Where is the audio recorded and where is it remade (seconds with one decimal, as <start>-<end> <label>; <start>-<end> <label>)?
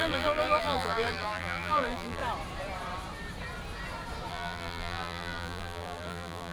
0.0-2.2 remade; 2.2-4.3 recorded; 4.3-6.5 remade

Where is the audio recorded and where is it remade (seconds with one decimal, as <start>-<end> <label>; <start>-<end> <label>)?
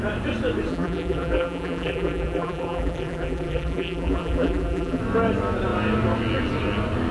0.0-0.7 recorded; 0.7-5.0 remade; 5.0-7.1 recorded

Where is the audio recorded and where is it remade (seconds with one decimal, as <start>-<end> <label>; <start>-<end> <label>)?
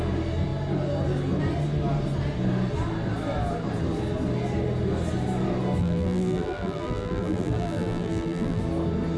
0.0-5.8 recorded; 5.8-8.6 remade; 8.6-9.2 recorded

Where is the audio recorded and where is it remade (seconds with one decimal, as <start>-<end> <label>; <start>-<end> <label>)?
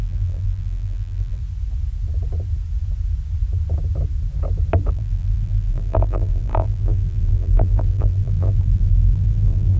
0.0-1.4 remade; 1.4-4.9 recorded; 4.9-9.8 remade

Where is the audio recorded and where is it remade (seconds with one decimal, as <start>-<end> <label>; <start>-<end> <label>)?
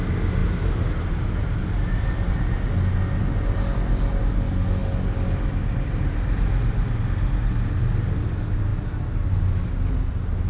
0.0-0.4 recorded; 0.4-2.7 remade; 2.7-10.5 recorded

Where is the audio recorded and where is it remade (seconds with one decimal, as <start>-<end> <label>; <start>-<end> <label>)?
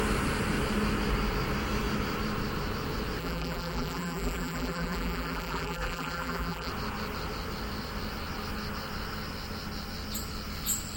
0.0-3.2 recorded; 3.2-6.7 remade; 6.7-11.0 recorded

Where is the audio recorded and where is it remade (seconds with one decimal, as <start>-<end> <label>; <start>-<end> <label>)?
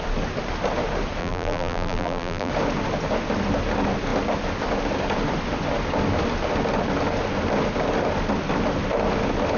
0.0-1.2 recorded; 1.2-2.5 remade; 2.5-9.6 recorded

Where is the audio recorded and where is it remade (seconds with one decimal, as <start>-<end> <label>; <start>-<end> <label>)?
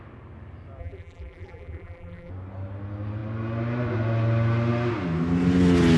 0.0-0.8 recorded; 0.8-2.3 remade; 2.3-6.0 recorded